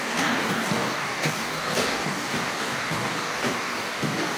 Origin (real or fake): fake